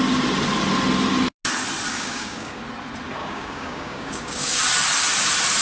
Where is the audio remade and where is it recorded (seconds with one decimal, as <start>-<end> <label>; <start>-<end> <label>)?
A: 0.0-1.9 recorded; 1.9-2.6 remade; 2.6-3.2 recorded; 3.2-4.6 remade; 4.6-5.6 recorded